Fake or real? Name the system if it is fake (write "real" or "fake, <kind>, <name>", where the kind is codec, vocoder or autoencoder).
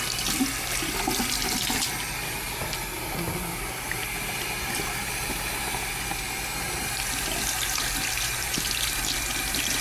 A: real